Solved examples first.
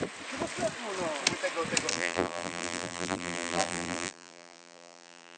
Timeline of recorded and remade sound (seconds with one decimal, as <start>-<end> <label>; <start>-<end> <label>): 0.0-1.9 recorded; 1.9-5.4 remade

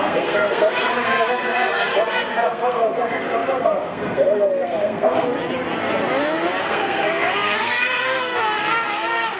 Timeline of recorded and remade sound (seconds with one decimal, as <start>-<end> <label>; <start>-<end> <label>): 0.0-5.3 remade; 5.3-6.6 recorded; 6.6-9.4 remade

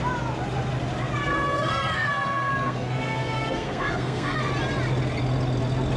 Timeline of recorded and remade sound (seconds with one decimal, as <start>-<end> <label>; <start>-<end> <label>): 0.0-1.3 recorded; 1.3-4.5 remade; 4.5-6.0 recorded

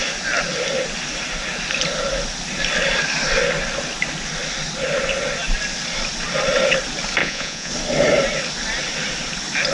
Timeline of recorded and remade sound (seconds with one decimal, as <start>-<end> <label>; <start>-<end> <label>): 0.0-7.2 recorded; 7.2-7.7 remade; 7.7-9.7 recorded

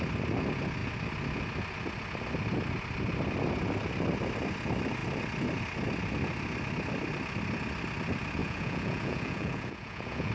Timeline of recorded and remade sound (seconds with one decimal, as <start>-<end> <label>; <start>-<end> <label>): 0.0-8.4 recorded; 8.4-10.3 remade

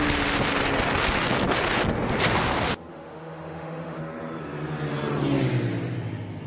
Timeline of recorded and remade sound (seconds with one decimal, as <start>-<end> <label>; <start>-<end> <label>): 0.0-2.9 recorded; 2.9-4.0 remade; 4.0-6.5 recorded

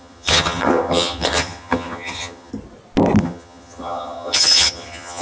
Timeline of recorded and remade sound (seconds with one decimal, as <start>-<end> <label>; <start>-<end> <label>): 0.0-2.5 remade; 2.5-3.2 recorded; 3.2-5.2 remade